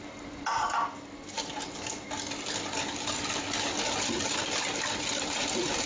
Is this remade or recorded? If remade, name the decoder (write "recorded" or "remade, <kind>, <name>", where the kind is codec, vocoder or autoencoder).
recorded